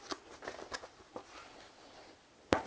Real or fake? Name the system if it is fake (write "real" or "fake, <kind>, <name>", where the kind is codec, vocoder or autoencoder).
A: real